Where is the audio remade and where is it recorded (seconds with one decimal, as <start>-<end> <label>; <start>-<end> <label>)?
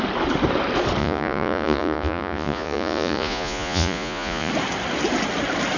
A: 0.0-1.0 recorded; 1.0-4.5 remade; 4.5-5.8 recorded